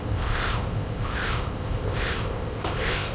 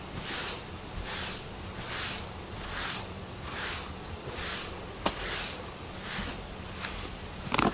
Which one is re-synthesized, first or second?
first